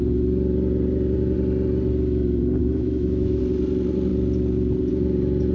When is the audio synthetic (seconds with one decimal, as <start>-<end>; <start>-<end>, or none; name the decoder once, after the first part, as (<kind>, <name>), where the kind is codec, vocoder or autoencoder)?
2.6-3.4 (autoencoder, DAC-VAE)